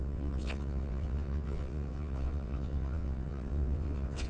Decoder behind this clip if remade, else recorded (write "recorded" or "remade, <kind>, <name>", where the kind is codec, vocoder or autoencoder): remade, vocoder, WaveNeXt